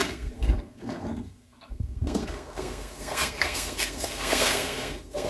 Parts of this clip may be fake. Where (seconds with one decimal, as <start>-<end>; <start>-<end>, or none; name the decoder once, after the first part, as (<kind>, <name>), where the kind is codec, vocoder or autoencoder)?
0.0-5.3 (codec, SNAC)